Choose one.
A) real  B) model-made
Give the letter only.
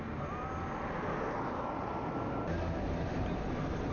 A